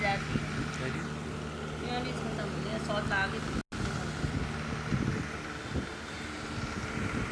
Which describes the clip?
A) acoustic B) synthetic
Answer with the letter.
A